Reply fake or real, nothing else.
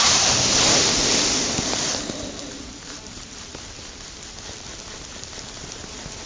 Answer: real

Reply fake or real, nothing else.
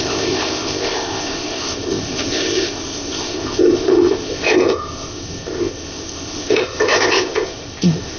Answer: fake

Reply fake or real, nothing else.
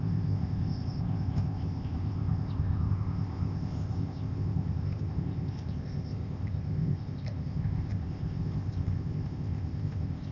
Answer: fake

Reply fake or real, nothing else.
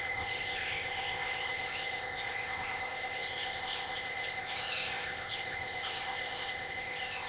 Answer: fake